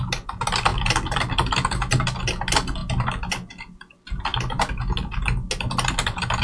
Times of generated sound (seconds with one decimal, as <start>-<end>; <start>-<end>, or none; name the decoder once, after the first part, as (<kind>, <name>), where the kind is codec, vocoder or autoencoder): none